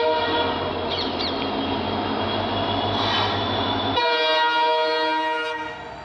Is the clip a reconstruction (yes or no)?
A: no